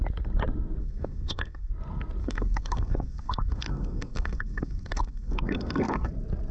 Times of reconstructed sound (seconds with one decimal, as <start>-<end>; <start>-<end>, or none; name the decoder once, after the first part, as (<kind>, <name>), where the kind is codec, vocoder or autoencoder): 0.8-1.7 (codec, SNAC); 2.2-6.1

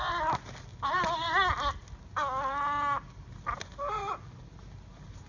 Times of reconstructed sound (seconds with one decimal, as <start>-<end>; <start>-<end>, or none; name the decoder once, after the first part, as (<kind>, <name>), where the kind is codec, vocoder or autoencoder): none

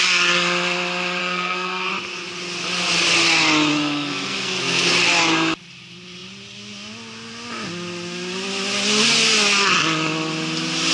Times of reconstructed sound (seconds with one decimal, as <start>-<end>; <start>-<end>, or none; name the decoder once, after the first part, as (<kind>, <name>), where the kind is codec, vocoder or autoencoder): 1.2-1.9 (codec, SNAC); 3.7-4.9

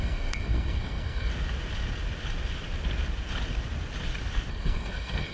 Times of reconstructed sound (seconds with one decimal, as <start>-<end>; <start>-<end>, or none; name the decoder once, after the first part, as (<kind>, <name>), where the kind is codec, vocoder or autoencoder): 0.0-1.3 (codec, SNAC); 4.5-5.3

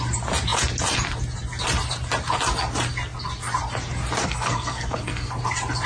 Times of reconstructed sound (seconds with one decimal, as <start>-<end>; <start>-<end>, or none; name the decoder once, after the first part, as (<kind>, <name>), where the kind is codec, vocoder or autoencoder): 4.2-5.3 (codec, SNAC)

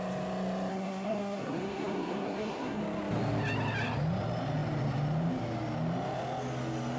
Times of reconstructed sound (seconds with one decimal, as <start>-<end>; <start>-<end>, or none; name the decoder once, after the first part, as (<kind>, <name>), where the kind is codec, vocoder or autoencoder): 0.7-2.8 (codec, SNAC)

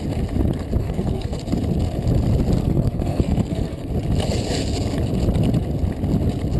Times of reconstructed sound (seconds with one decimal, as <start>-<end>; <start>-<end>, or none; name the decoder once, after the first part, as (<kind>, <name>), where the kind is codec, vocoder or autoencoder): 0.8-1.4 (codec, SNAC); 2.6-3.9